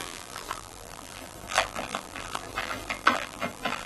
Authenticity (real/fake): fake